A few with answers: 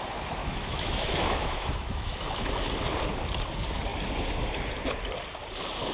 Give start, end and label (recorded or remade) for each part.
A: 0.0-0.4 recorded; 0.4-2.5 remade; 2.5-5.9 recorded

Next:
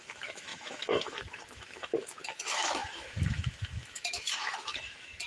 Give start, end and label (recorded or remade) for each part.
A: 0.0-5.3 remade

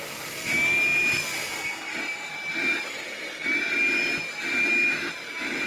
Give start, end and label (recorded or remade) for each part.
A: 0.0-5.7 recorded

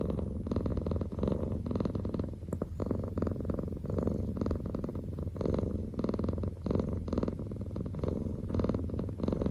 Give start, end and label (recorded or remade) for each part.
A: 0.0-9.5 recorded